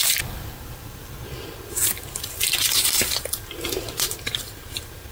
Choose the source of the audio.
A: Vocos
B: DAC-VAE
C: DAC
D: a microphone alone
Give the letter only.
D